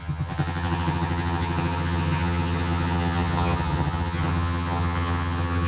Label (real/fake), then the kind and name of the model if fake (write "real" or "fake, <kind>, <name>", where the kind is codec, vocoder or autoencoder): fake, vocoder, HiFi-GAN